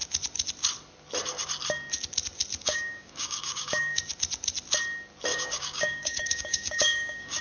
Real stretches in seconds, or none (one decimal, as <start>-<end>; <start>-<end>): 0.0-2.6; 4.0-5.3